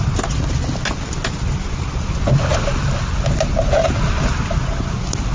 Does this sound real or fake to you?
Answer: real